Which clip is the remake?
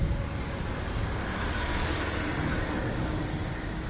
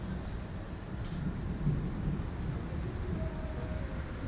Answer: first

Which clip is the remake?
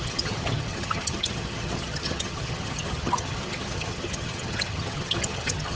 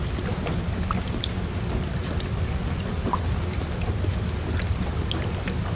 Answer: first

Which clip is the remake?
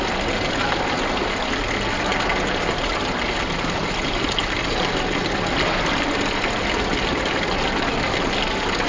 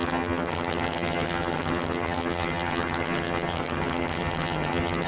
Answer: second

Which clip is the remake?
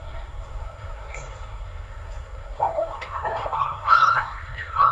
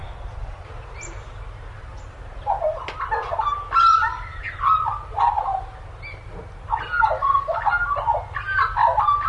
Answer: first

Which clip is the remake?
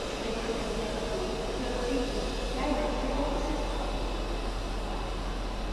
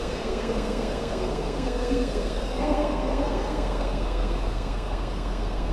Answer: second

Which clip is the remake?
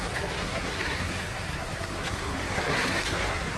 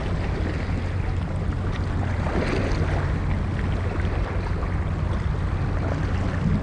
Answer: first